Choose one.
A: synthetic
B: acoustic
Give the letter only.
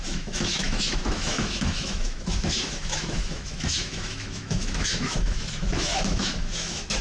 A